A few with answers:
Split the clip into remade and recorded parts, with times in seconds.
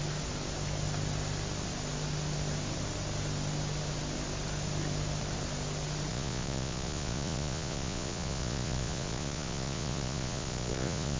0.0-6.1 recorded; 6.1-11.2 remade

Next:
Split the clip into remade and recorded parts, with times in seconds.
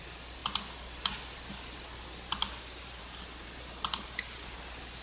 0.0-5.0 recorded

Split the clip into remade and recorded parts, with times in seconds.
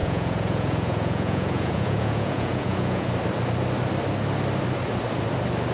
0.0-3.1 remade; 3.1-5.7 recorded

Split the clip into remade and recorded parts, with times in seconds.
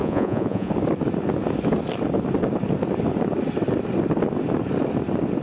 0.0-0.7 remade; 0.7-5.4 recorded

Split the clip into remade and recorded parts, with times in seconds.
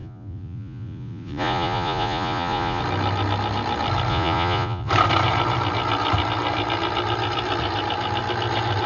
0.0-2.8 remade; 2.8-4.1 recorded; 4.1-4.9 remade; 4.9-8.9 recorded